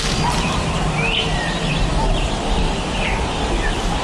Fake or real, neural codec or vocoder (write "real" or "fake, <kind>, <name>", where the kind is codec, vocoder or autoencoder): fake, vocoder, BigVGAN v2